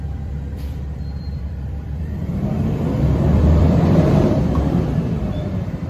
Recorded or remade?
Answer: remade